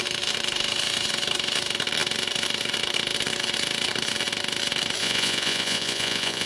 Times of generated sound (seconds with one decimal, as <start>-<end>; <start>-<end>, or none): 5.0-6.5